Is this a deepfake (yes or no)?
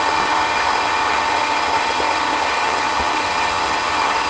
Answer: yes